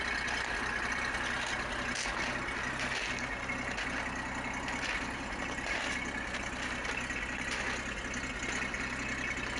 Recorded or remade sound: recorded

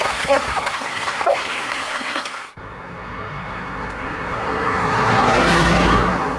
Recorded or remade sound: remade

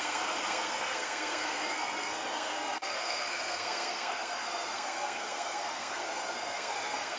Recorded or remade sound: remade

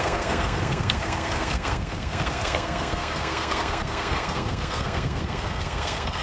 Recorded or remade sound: remade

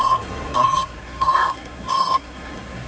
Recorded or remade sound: remade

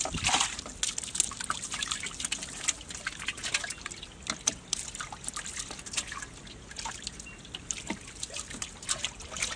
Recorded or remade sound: recorded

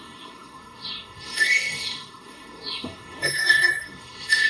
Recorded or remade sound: remade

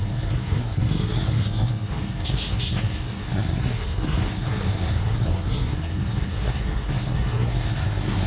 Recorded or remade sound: remade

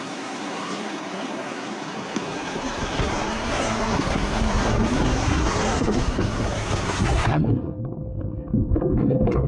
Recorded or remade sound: remade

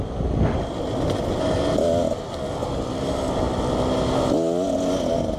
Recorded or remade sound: recorded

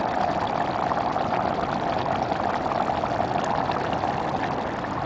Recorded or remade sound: recorded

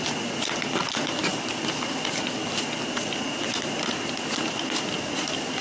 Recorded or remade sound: recorded